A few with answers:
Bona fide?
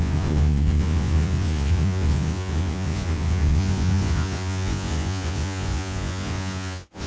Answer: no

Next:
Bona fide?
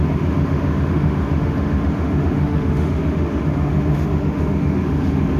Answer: no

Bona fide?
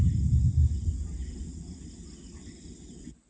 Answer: yes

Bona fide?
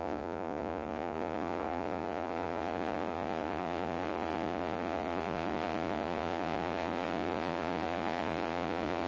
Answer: no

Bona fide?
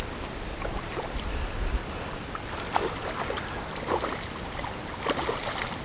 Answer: yes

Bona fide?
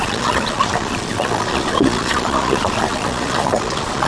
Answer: no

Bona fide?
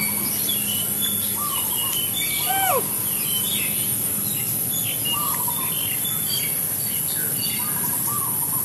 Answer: yes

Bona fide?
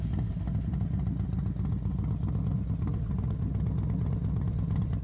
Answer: yes